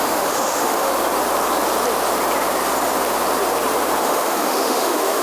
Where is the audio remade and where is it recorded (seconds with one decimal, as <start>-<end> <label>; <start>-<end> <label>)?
0.0-0.9 remade; 0.9-4.0 recorded; 4.0-5.2 remade